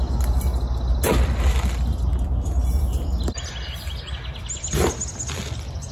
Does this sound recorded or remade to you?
recorded